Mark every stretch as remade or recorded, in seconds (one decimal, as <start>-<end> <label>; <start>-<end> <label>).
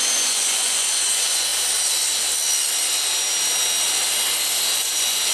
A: 0.0-1.5 remade; 1.5-4.7 recorded; 4.7-5.3 remade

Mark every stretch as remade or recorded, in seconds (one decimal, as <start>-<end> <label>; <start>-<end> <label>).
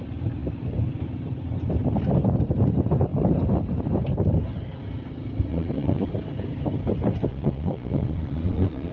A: 0.0-5.5 recorded; 5.5-6.1 remade; 6.1-7.3 recorded; 7.3-8.9 remade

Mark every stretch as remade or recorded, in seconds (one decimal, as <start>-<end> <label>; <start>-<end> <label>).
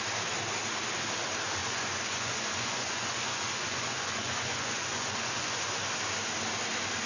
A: 0.0-1.6 recorded; 1.6-5.8 remade; 5.8-7.1 recorded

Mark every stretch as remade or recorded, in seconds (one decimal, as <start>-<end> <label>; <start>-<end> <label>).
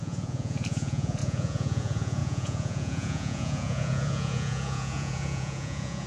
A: 0.0-6.1 remade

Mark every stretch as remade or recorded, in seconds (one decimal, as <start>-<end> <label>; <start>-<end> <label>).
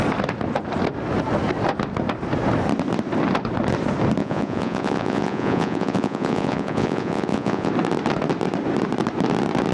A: 0.0-4.2 recorded; 4.2-7.7 remade; 7.7-9.7 recorded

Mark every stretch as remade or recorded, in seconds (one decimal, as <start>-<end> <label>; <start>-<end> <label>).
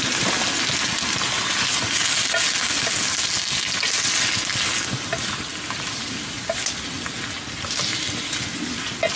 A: 0.0-9.2 recorded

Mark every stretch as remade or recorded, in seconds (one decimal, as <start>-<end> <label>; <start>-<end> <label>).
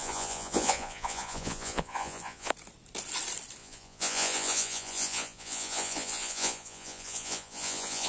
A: 0.0-2.5 remade; 2.5-3.6 recorded; 3.6-8.1 remade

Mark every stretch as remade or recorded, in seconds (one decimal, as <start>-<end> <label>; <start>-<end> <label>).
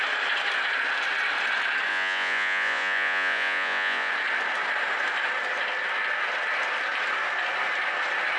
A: 0.0-1.9 recorded; 1.9-4.1 remade; 4.1-8.4 recorded